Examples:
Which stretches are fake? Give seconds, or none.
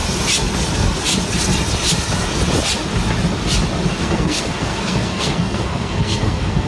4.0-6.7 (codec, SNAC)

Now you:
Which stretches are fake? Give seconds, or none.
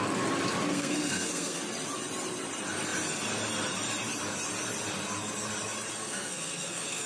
0.7-1.6 (codec, SNAC); 6.0-7.1